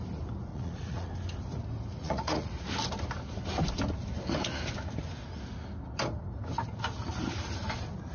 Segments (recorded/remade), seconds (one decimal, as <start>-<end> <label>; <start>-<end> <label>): 0.0-0.5 recorded; 0.5-1.1 remade; 1.1-2.0 recorded; 2.0-2.7 remade; 2.7-8.1 recorded